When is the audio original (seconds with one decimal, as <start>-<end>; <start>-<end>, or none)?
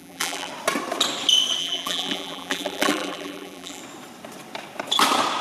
0.5-1.6; 3.8-5.4